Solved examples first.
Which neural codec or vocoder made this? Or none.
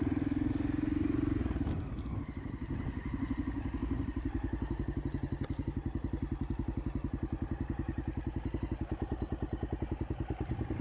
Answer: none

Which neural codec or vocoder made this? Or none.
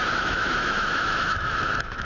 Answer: autoencoder, DAC-VAE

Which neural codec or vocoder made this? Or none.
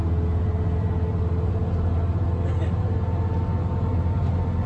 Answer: none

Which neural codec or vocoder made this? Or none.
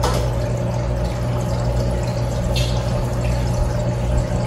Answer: none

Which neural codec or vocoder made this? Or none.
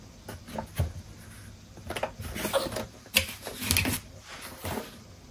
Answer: none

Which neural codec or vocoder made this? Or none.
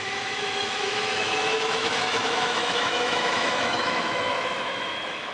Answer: autoencoder, DAC-VAE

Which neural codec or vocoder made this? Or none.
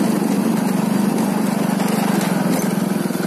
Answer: none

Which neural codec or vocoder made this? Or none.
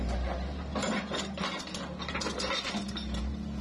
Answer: none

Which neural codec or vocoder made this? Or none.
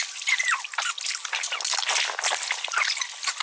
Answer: none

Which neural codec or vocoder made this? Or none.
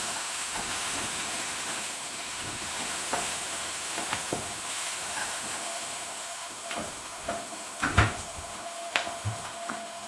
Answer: autoencoder, DAC-VAE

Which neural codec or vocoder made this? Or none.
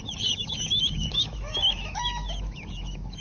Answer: autoencoder, DAC-VAE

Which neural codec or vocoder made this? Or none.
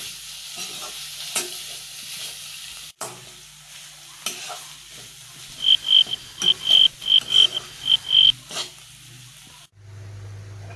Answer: none